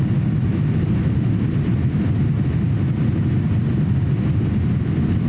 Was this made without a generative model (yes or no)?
yes